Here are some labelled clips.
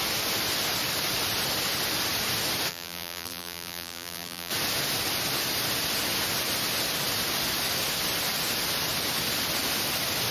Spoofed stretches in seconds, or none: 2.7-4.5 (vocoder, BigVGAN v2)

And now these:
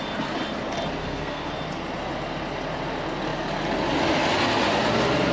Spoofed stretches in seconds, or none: 1.0-1.5 (codec, SNAC)

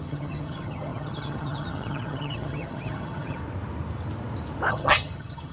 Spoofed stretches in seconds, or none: 0.0-3.4 (vocoder, HiFi-GAN); 4.7-5.5

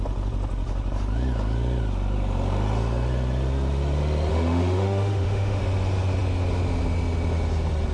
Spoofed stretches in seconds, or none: 4.3-5.6 (autoencoder, DAC-VAE)

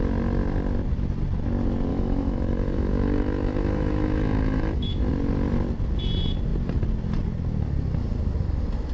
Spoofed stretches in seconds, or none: 1.9-5.1 (autoencoder, DAC-VAE)